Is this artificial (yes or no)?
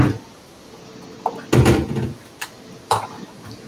no